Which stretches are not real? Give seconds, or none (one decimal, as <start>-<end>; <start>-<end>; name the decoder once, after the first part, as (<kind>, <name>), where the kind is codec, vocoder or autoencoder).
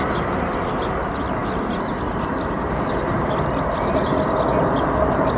none